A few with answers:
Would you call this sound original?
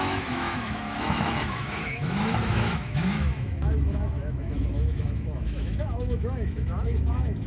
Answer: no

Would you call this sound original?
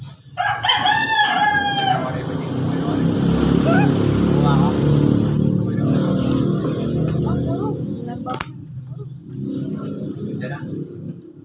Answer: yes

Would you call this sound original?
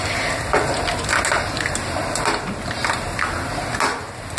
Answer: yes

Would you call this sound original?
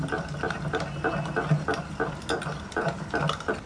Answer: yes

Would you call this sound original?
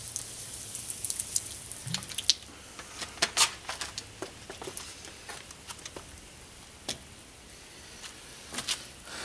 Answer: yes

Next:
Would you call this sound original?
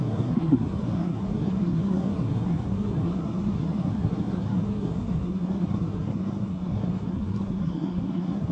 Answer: no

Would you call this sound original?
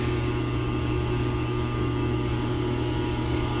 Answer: no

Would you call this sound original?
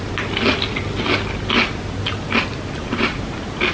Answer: yes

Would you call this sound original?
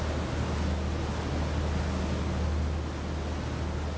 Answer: yes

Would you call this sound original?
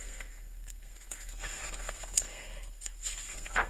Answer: no